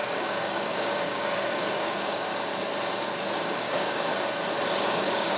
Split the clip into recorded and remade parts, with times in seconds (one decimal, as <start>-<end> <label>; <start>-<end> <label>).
0.0-2.3 remade; 2.3-3.4 recorded; 3.4-4.1 remade; 4.1-4.9 recorded; 4.9-5.4 remade